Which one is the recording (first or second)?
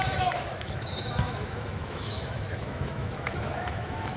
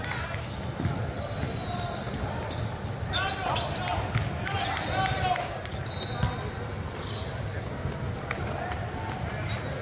second